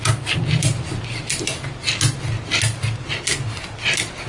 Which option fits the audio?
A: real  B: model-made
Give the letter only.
A